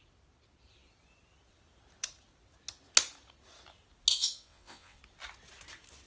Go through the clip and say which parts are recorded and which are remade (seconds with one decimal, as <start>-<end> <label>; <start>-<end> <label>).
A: 0.0-4.1 recorded; 4.1-5.0 remade; 5.0-6.1 recorded